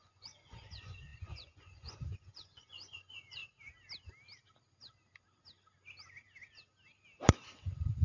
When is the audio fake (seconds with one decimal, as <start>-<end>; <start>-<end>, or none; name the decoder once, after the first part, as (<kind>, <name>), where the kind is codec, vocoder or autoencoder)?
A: 0.0-3.4 (vocoder, Vocos); 7.6-8.0